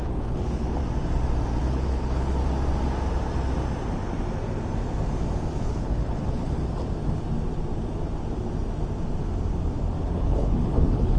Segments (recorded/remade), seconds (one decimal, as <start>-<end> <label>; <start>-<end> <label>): 0.0-0.8 remade; 0.8-1.6 recorded; 1.6-2.4 remade; 2.4-5.6 recorded; 5.6-6.6 remade; 6.6-10.0 recorded; 10.0-11.2 remade